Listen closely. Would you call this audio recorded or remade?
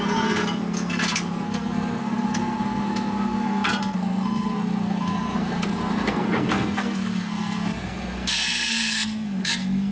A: remade